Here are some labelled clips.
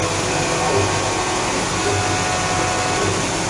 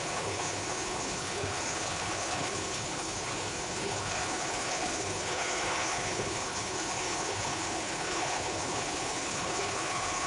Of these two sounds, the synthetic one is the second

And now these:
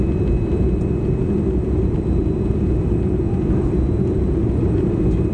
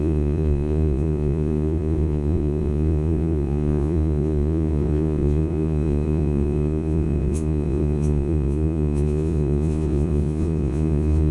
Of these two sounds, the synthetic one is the second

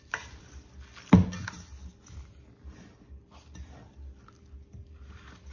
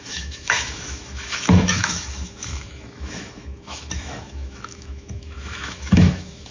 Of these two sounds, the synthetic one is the second